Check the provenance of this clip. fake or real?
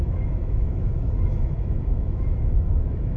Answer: fake